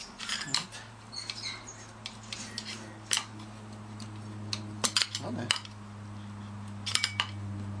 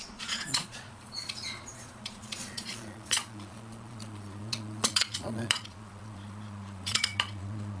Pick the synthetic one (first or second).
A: second